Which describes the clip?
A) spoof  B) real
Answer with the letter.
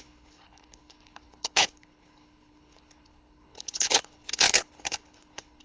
A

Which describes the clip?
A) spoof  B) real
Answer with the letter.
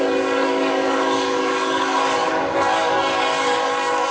A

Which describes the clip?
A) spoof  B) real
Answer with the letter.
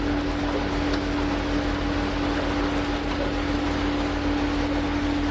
B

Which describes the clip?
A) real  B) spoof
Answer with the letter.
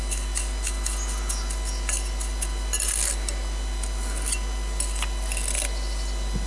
A